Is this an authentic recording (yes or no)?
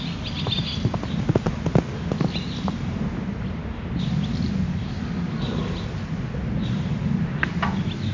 yes